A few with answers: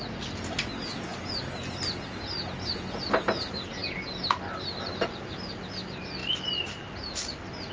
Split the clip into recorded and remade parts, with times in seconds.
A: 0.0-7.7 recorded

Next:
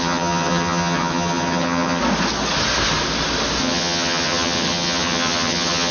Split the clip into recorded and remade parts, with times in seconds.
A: 0.0-2.0 remade; 2.0-3.6 recorded; 3.6-5.9 remade